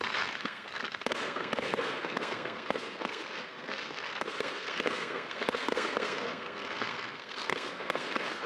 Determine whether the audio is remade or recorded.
remade